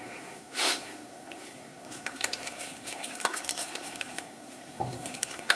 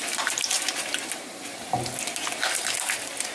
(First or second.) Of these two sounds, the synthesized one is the first